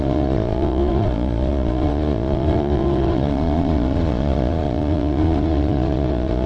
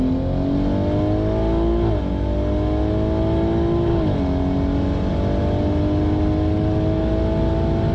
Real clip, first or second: second